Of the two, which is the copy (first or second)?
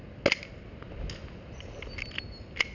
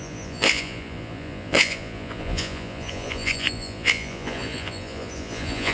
second